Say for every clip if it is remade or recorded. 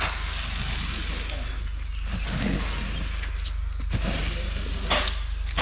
recorded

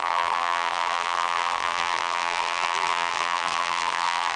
remade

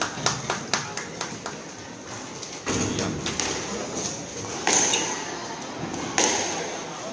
recorded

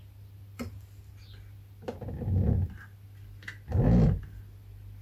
recorded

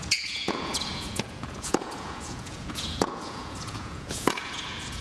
remade